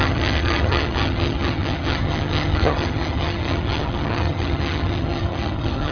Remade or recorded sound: remade